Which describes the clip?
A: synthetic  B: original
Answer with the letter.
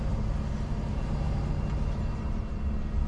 B